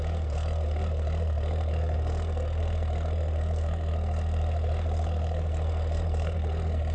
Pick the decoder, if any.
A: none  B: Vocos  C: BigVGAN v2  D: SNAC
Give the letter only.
D